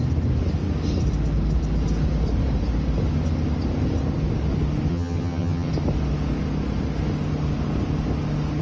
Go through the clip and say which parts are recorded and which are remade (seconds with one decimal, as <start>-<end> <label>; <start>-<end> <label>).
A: 0.0-4.9 recorded; 4.9-5.7 remade; 5.7-8.6 recorded